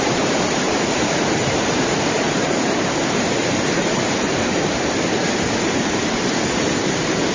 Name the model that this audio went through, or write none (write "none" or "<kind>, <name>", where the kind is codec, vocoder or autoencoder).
vocoder, BigVGAN v2